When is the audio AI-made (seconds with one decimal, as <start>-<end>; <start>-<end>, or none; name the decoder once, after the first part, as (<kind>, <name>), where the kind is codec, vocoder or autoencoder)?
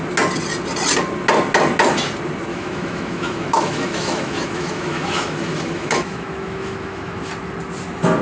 2.5-7.3 (autoencoder, DAC-VAE)